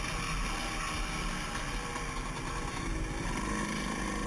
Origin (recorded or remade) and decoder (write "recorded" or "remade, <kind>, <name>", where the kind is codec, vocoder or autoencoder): recorded